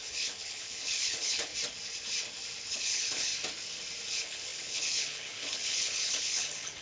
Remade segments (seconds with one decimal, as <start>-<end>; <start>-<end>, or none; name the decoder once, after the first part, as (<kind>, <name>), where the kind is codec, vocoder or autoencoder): 0.0-1.5 (codec, HILCodec); 2.7-3.3; 4.1-6.8